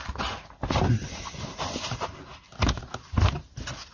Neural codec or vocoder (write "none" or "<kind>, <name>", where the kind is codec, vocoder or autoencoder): none